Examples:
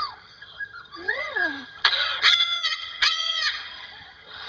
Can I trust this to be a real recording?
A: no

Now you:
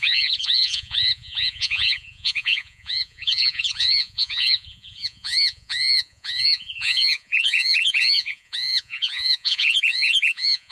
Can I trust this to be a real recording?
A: no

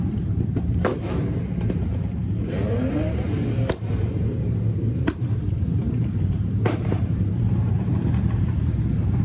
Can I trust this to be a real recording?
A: no